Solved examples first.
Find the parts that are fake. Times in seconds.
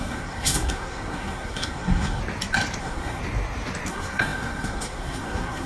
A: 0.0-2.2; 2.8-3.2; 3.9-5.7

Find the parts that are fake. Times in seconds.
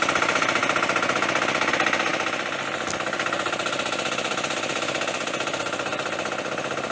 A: none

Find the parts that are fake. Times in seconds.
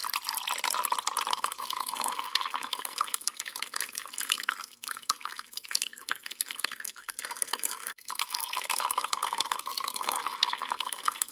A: 1.3-11.3